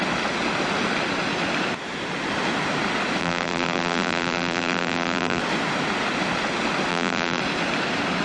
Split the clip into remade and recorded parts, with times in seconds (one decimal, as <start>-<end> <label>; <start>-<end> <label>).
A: 0.0-3.2 recorded; 3.2-5.4 remade; 5.4-6.9 recorded; 6.9-7.4 remade; 7.4-8.2 recorded